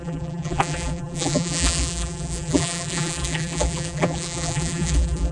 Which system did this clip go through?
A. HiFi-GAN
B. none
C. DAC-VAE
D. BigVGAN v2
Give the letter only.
D